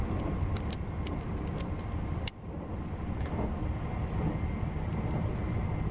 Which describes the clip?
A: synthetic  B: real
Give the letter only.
B